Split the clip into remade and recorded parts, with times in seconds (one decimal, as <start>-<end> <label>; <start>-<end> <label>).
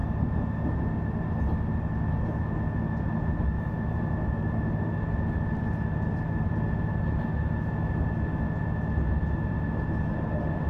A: 0.0-10.7 recorded